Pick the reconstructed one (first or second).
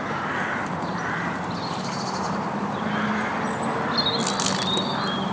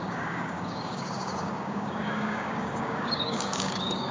second